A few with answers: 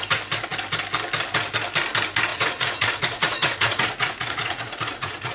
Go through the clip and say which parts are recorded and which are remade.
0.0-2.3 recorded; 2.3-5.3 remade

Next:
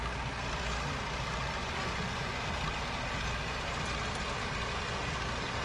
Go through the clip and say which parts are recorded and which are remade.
0.0-1.6 recorded; 1.6-2.4 remade; 2.4-5.6 recorded

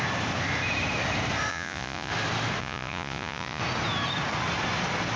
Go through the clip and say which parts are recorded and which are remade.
0.0-1.5 recorded; 1.5-2.1 remade; 2.1-2.6 recorded; 2.6-3.6 remade; 3.6-5.2 recorded

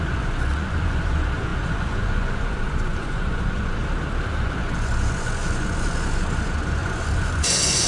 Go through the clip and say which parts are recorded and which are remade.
0.0-3.8 remade; 3.8-4.4 recorded; 4.4-7.9 remade

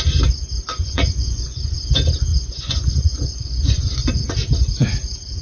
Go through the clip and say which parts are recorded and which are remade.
0.0-0.7 recorded; 0.7-1.9 remade; 1.9-2.3 recorded; 2.3-4.1 remade; 4.1-5.4 recorded